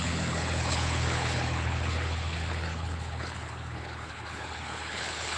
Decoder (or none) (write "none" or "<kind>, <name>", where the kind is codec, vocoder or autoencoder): codec, HILCodec